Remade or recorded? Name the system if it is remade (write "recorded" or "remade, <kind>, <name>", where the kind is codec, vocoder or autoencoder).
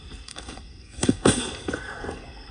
remade, codec, SNAC